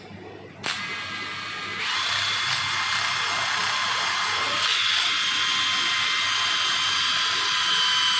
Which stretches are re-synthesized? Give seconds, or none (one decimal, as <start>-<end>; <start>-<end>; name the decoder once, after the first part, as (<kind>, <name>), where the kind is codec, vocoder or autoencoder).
none